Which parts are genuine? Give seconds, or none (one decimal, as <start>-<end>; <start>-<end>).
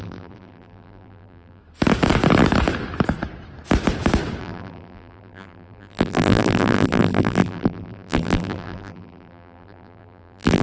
1.6-4.4